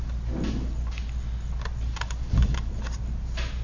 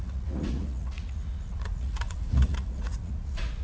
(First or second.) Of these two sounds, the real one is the first